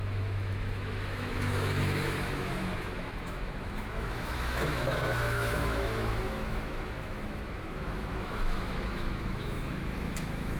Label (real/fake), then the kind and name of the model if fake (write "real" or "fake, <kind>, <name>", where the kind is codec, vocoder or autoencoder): fake, autoencoder, DAC-VAE